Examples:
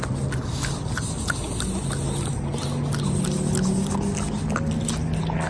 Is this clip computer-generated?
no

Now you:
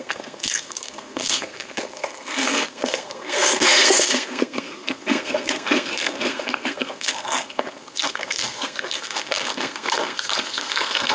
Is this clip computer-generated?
yes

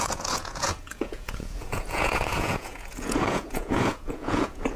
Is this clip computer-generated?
yes